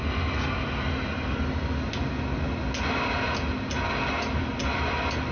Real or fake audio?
real